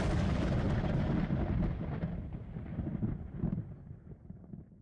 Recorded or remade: recorded